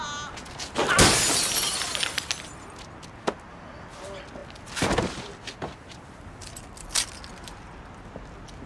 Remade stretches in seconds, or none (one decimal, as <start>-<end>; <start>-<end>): 6.4-7.3

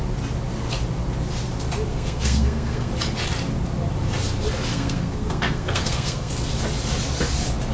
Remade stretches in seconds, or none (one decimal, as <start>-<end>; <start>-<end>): 1.9-2.9; 4.7-6.3

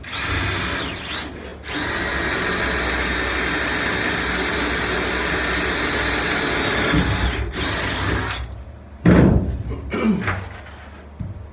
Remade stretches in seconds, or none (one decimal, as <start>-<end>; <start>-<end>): none

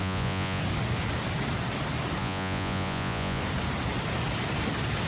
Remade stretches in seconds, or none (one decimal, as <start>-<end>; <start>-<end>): 0.0-0.6; 2.2-3.4

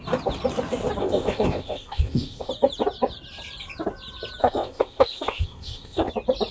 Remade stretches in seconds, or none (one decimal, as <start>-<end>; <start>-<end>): 1.0-2.5; 4.4-6.1

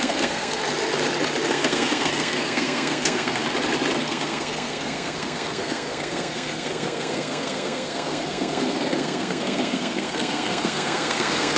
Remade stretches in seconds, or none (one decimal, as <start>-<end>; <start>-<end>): 0.0-0.6; 1.5-3.4; 4.0-11.6

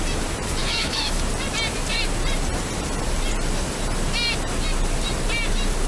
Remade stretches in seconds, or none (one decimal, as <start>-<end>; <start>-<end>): 0.6-1.2